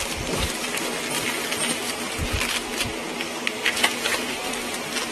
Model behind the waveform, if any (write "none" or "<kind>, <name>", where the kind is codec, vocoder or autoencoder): none